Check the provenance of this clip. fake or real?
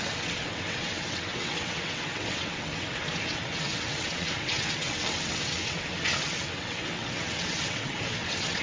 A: fake